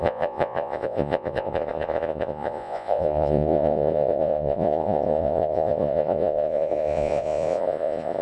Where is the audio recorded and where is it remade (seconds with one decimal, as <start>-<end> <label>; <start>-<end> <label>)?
0.0-8.2 remade